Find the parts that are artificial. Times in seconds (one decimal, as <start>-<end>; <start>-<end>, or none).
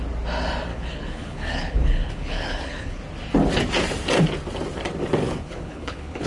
0.7-3.0; 5.2-6.3